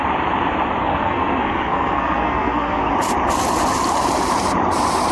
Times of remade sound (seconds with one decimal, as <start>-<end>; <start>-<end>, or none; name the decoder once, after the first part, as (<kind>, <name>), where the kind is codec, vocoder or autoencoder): 0.8-2.9 (codec, SNAC)